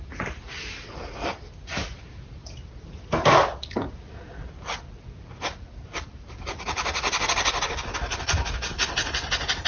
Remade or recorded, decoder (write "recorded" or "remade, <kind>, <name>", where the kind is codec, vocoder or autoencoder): recorded